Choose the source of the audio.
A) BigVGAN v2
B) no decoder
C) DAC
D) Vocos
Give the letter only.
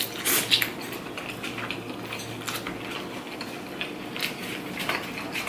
B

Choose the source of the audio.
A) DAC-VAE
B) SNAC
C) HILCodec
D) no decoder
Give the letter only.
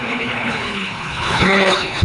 C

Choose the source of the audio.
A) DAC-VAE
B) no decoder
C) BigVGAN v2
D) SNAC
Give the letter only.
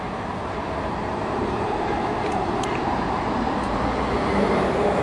C